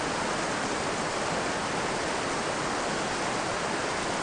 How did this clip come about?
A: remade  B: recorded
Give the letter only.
B